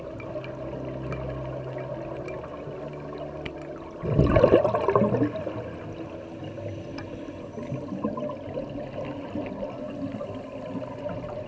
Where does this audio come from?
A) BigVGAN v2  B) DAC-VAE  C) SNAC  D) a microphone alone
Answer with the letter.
D